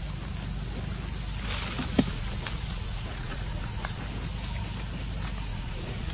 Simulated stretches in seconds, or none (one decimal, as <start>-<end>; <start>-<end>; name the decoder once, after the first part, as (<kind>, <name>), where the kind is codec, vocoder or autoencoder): 2.1-4.0 (vocoder, Vocos); 5.5-6.1